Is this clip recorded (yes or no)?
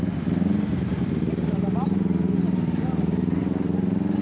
yes